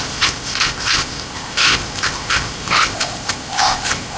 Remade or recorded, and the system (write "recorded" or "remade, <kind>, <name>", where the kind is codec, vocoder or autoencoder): remade, codec, ZipCodec